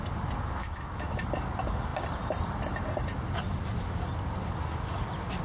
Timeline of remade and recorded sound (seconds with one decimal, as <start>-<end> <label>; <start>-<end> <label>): 0.0-0.6 recorded; 0.6-1.2 remade; 1.2-5.4 recorded